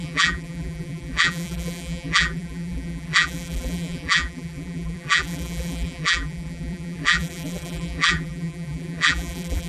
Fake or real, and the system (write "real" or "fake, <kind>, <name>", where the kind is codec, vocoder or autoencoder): fake, vocoder, BigVGAN v2